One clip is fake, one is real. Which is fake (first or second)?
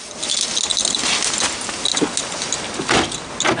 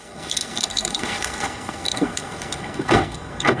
second